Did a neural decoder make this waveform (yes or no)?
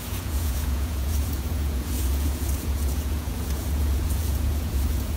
yes